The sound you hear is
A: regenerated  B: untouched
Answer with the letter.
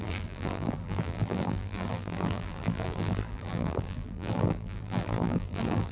A